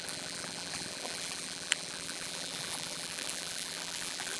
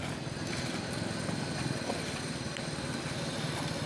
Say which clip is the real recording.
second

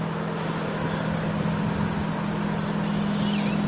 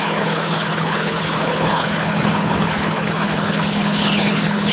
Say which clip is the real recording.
first